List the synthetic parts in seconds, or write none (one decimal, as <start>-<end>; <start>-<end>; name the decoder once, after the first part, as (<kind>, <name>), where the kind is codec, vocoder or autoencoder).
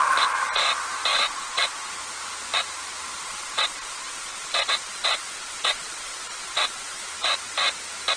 1.1-1.9 (vocoder, Vocos); 3.2-7.1